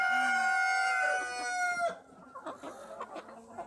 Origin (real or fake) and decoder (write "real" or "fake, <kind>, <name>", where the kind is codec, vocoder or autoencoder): real